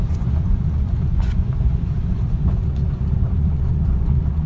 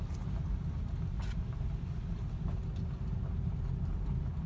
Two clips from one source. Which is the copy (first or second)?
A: first